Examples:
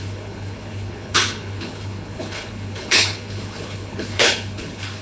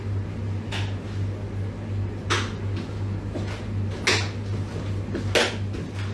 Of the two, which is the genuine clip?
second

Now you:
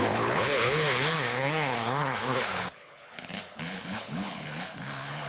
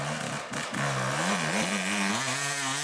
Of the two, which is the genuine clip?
second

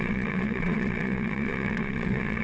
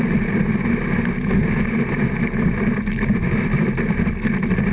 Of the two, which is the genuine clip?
second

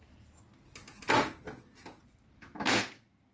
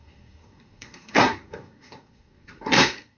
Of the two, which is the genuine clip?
first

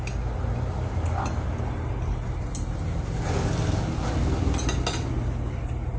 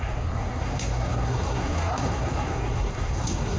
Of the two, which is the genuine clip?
first